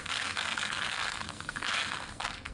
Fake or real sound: fake